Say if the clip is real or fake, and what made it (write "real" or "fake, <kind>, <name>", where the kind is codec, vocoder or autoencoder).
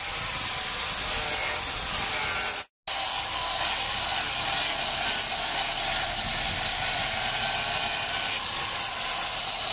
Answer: real